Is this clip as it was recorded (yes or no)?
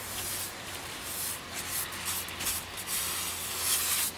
yes